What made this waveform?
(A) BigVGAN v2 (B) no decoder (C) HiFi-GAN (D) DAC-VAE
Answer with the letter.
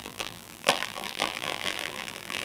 A